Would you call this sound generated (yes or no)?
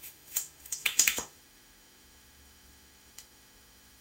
yes